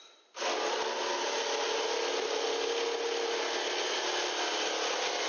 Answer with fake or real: real